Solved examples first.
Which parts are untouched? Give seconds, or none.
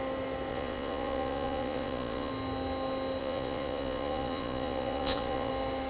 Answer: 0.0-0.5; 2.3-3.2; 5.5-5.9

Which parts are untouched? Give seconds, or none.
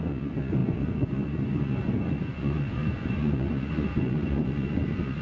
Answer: none